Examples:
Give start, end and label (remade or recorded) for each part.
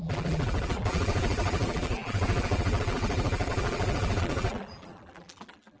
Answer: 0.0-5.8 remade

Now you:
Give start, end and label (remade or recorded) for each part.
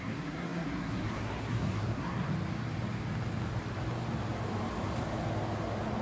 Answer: 0.0-2.3 remade; 2.3-6.0 recorded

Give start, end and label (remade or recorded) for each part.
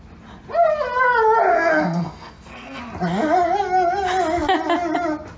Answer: 0.0-1.5 recorded; 1.5-2.8 remade; 2.8-5.4 recorded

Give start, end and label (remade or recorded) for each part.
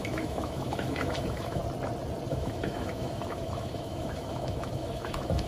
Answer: 0.0-1.6 remade; 1.6-2.3 recorded; 2.3-5.5 remade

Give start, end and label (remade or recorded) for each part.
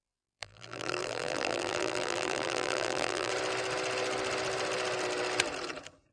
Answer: 0.0-3.3 remade; 3.3-6.1 recorded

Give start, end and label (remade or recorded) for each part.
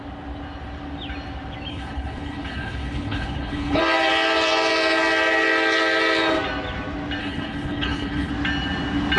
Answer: 0.0-1.7 recorded; 1.7-3.8 remade; 3.8-7.2 recorded; 7.2-8.3 remade; 8.3-9.2 recorded